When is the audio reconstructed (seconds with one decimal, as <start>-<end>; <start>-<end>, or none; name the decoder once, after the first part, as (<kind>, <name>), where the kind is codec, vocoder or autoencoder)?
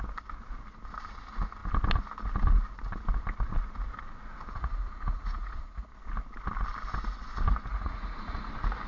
4.5-5.9 (vocoder, Vocos); 7.7-8.5